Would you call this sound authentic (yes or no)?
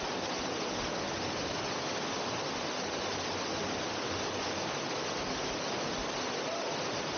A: yes